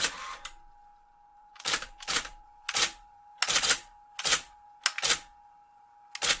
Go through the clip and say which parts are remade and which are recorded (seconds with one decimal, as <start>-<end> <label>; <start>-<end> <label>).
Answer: 0.0-1.3 recorded; 1.3-4.8 remade; 4.8-6.4 recorded